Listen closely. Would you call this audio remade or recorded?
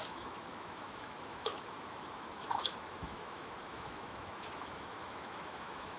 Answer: remade